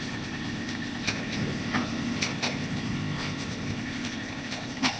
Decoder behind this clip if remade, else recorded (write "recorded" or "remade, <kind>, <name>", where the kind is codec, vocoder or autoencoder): remade, codec, ZipCodec